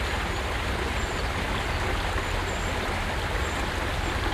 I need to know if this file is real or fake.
real